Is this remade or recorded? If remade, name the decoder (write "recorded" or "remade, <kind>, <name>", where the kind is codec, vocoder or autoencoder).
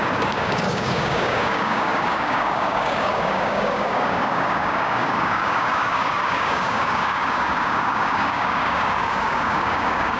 remade, codec, DAC